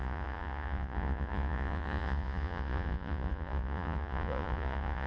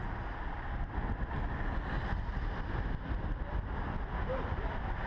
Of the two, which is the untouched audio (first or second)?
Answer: second